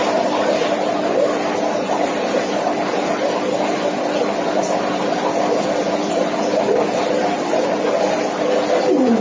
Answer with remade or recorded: recorded